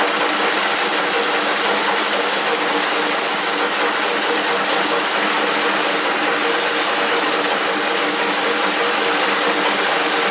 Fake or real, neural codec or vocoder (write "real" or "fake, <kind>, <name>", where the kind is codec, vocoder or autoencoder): real